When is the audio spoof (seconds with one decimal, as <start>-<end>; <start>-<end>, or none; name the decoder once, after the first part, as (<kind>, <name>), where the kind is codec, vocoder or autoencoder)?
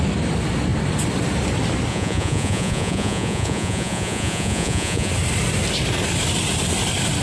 1.9-5.1 (vocoder, Vocos)